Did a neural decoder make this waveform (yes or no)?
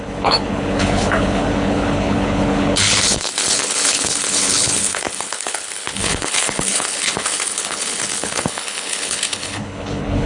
yes